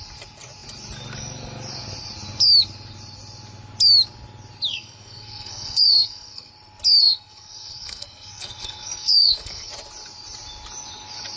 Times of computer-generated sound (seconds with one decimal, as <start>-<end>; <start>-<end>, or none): 4.7-6.5; 7.0-9.7

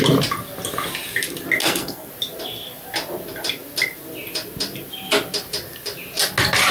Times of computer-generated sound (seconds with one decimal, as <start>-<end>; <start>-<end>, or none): 1.6-2.1

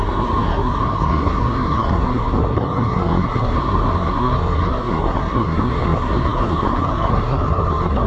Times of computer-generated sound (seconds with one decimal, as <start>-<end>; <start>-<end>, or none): 0.0-8.1

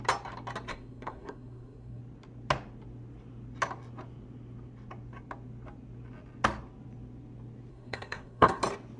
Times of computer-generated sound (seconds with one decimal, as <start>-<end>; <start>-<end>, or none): 0.7-2.0; 7.7-8.6

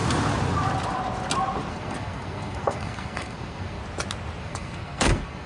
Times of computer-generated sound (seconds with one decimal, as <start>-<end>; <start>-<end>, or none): 1.7-3.8; 4.4-5.5

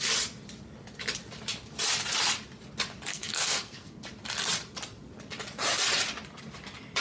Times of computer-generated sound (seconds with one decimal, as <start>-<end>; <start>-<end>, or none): 3.1-4.0